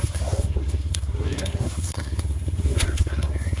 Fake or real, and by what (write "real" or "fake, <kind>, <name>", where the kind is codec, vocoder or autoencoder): fake, codec, SNAC